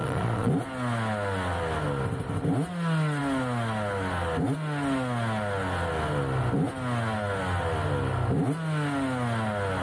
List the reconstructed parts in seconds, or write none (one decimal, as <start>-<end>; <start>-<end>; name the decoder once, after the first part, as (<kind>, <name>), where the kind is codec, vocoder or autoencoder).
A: 0.0-0.5 (vocoder, Vocos)